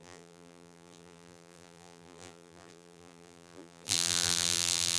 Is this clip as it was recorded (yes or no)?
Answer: no